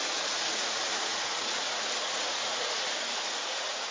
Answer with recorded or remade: remade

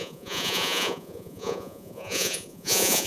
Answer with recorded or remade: remade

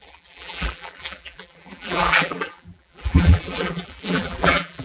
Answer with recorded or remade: remade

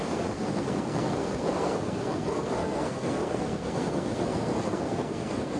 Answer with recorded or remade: remade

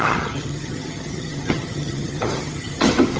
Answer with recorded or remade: remade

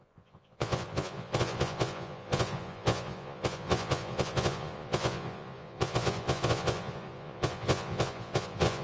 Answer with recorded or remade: remade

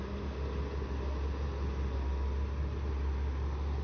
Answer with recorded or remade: recorded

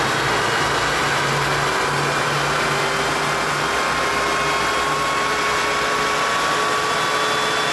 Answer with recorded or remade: recorded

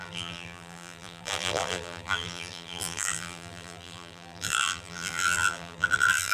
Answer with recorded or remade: remade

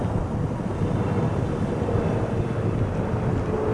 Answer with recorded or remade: recorded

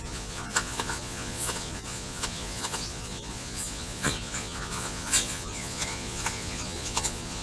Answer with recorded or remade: remade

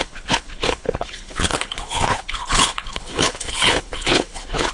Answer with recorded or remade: remade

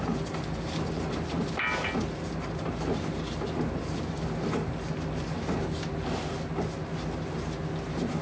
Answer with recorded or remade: recorded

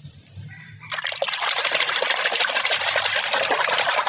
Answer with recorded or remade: recorded